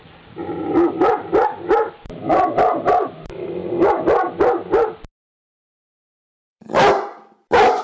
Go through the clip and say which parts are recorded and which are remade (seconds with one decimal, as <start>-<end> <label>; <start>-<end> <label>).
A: 0.0-2.2 remade; 2.2-3.1 recorded; 3.1-3.6 remade; 3.6-5.1 recorded; 5.1-7.8 remade